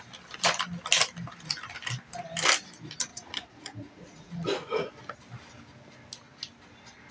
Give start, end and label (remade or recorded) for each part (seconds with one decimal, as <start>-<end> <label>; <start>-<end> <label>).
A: 0.0-3.1 recorded; 3.1-4.9 remade; 4.9-7.1 recorded